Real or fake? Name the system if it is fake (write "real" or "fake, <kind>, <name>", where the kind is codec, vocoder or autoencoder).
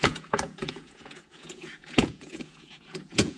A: fake, vocoder, Vocos